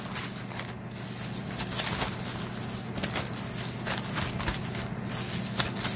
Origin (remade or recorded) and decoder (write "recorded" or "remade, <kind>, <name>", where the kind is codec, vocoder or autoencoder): recorded